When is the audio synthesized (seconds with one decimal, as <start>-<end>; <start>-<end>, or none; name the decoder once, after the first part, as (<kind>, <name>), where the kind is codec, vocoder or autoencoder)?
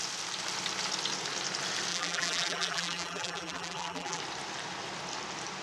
1.9-4.2 (vocoder, BigVGAN v2)